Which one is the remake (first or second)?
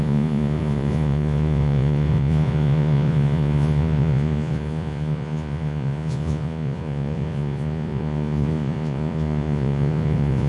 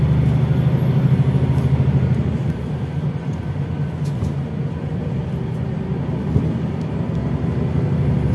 first